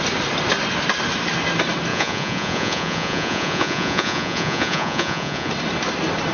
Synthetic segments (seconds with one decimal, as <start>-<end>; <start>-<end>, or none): 1.9-5.5